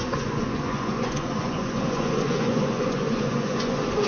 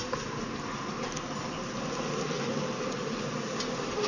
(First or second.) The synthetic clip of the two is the first